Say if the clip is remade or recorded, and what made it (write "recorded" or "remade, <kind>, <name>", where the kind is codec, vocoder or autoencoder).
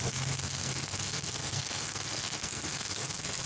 remade, codec, SNAC